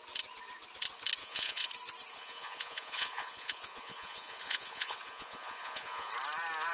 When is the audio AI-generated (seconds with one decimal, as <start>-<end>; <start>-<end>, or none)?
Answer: 1.2-1.7; 2.1-6.1

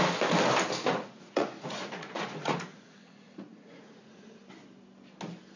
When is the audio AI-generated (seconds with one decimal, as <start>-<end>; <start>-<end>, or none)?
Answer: 1.0-4.4